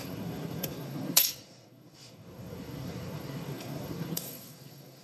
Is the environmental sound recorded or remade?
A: remade